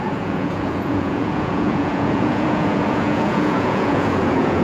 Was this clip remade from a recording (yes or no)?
yes